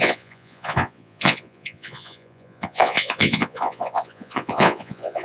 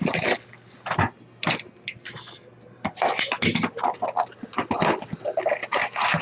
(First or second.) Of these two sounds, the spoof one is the first